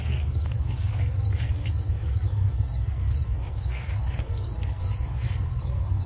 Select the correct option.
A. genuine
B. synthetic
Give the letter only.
B